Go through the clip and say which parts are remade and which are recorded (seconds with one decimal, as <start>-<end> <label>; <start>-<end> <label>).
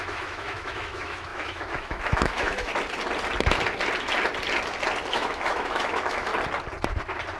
0.0-2.7 remade; 2.7-5.1 recorded; 5.1-6.3 remade; 6.3-7.4 recorded